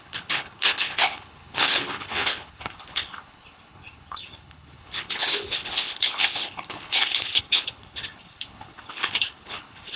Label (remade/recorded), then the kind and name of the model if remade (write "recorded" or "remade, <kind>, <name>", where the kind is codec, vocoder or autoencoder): remade, codec, HILCodec